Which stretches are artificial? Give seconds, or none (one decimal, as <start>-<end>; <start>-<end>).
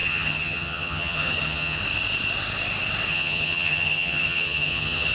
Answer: 0.0-1.8; 3.1-5.1